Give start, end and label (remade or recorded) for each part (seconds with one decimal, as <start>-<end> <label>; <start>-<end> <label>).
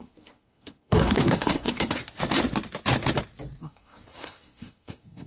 0.0-2.0 remade; 2.0-3.6 recorded; 3.6-5.3 remade